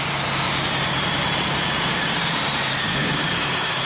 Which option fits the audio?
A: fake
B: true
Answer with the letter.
A